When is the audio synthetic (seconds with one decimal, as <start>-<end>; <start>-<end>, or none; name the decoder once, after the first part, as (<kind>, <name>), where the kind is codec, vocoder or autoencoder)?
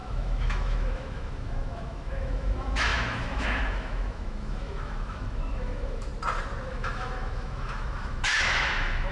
0.0-6.1 (autoencoder, DAC-VAE); 6.7-9.1